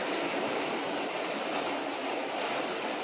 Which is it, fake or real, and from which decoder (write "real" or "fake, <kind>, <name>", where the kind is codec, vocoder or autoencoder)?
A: real